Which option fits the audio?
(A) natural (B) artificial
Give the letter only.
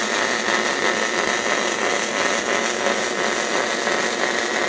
A